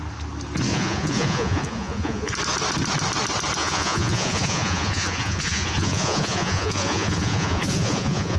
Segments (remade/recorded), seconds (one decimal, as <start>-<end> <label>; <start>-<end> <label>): 0.0-0.7 recorded; 0.7-2.3 remade; 2.3-3.6 recorded; 3.6-8.4 remade